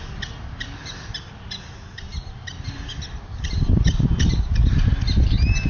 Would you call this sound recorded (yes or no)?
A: yes